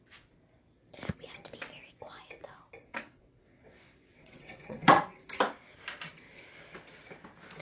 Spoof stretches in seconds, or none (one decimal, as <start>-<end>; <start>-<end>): 2.8-5.0